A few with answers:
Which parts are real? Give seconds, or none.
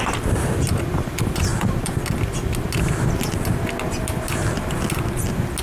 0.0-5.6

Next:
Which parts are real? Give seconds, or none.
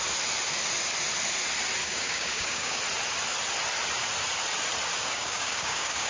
0.0-1.8; 2.8-5.0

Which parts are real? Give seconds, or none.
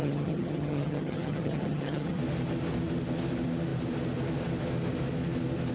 2.2-5.7